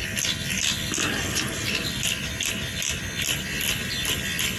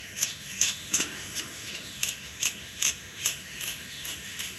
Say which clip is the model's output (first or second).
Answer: second